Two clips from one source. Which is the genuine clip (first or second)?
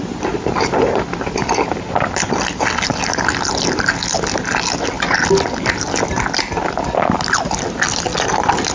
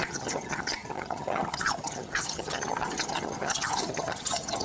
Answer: first